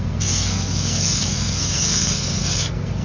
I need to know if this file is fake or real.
fake